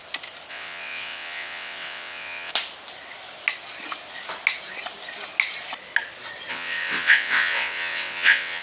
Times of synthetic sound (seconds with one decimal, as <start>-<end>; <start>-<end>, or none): 0.5-2.5; 6.5-8.6